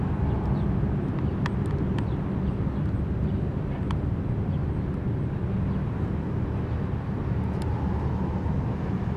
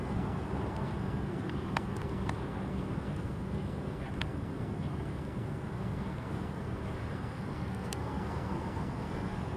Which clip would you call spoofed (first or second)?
second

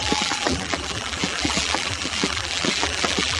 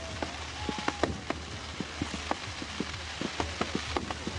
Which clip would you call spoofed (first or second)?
first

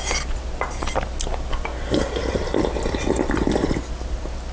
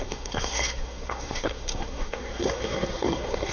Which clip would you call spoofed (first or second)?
second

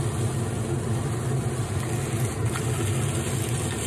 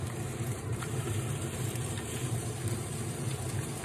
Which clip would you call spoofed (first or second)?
second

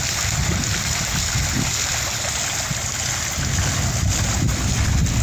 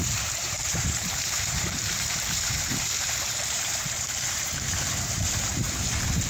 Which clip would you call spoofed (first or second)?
second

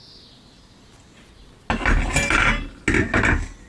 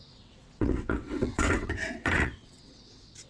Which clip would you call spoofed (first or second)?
second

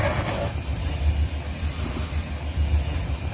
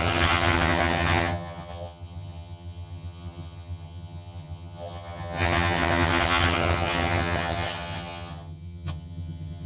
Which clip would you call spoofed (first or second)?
second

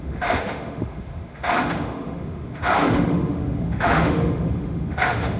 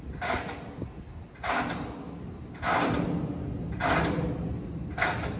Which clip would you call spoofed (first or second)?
first